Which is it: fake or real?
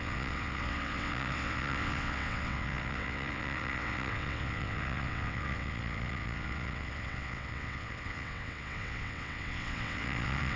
fake